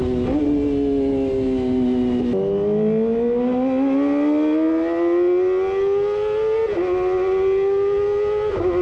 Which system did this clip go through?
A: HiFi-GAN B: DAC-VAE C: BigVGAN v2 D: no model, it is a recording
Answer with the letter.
D